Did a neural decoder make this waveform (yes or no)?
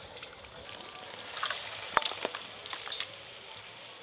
no